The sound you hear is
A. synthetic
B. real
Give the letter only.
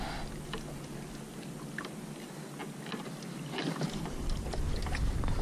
B